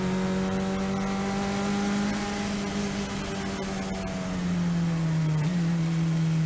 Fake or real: real